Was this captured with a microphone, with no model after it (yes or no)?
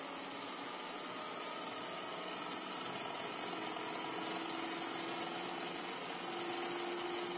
yes